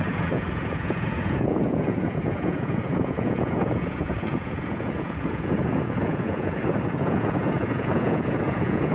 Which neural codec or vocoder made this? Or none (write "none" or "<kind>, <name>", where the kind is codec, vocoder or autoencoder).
vocoder, Vocos